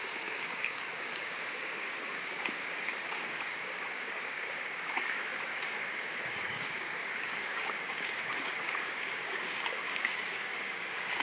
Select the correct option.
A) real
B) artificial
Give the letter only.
B